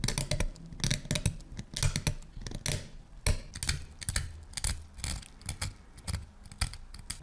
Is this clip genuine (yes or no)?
yes